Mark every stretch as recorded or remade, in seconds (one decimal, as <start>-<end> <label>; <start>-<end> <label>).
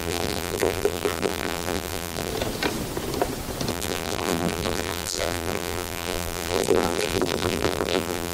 0.0-2.3 remade; 2.3-3.7 recorded; 3.7-8.3 remade